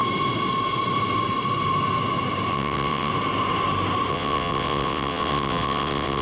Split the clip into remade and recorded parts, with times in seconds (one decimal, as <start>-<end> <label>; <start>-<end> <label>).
0.0-2.5 recorded; 2.5-3.1 remade; 3.1-4.1 recorded; 4.1-6.2 remade